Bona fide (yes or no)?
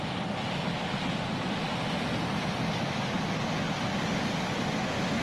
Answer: yes